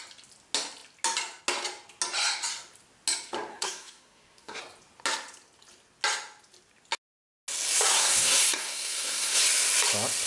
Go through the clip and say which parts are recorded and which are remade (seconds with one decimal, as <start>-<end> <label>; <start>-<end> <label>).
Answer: 0.0-3.5 recorded; 3.5-4.6 remade; 4.6-7.9 recorded; 7.9-9.4 remade; 9.4-10.3 recorded